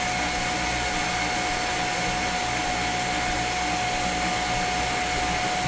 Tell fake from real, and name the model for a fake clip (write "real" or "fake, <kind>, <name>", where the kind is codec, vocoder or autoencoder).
real